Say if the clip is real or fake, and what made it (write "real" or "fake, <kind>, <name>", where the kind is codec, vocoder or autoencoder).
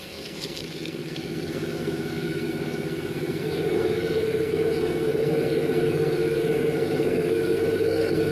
fake, codec, SNAC